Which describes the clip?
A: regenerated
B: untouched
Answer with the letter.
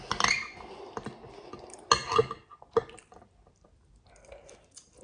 B